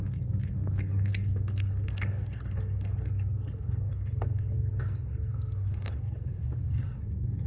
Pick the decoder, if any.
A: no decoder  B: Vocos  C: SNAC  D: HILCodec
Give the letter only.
C